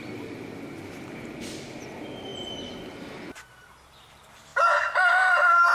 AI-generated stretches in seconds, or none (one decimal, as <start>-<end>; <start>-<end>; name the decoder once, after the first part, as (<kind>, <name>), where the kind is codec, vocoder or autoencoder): none

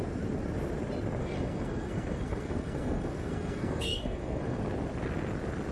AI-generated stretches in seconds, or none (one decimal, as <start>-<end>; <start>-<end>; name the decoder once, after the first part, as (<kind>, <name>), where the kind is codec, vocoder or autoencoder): 1.2-4.6 (codec, SNAC)

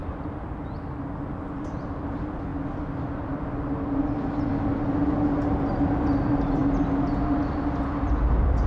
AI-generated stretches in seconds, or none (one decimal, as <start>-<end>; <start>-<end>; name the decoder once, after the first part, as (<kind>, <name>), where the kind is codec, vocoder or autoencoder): none

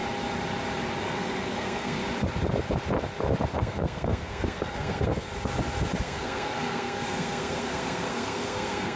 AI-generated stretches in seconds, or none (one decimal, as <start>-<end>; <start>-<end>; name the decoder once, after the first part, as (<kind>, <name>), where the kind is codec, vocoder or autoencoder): 1.0-2.0 (codec, SNAC); 3.5-5.3; 6.0-9.0

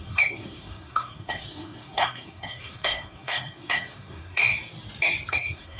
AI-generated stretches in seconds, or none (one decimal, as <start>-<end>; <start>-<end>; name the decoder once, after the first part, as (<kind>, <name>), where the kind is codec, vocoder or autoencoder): 0.0-4.5 (codec, SNAC); 5.3-5.8